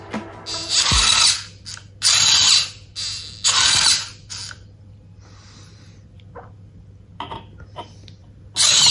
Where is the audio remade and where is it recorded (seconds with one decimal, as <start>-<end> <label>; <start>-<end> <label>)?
0.0-8.9 recorded